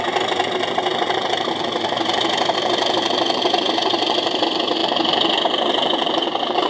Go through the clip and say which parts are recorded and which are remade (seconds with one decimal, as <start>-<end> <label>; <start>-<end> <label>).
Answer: 0.0-6.7 recorded